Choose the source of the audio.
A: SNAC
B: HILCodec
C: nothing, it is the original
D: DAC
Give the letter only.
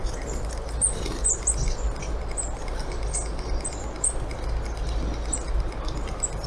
C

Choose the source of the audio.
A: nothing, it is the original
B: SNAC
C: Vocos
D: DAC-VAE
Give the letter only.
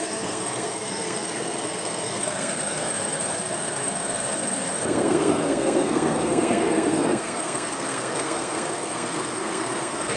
B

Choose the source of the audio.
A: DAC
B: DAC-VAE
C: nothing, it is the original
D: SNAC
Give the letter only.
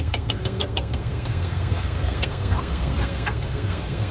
D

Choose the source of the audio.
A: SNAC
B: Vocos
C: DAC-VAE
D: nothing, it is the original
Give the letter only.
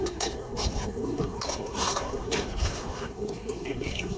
A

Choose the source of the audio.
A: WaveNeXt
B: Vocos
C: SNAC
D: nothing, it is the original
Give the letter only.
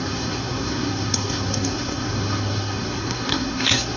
C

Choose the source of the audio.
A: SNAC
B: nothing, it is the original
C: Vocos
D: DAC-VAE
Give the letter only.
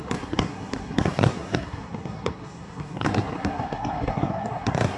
A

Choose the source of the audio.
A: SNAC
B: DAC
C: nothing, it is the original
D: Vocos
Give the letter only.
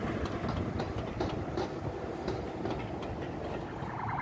C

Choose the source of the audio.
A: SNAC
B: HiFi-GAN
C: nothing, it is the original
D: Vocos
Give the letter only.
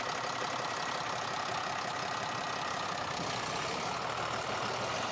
C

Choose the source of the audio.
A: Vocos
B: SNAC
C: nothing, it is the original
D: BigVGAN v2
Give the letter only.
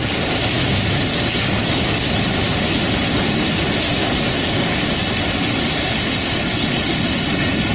C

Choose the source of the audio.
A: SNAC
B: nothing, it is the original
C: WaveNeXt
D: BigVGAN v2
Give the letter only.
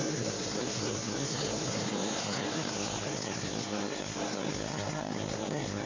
A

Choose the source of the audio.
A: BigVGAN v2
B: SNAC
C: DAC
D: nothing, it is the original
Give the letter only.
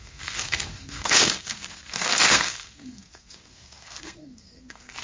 B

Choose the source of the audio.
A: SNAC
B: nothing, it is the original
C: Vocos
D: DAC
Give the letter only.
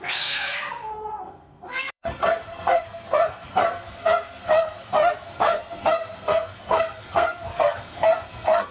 A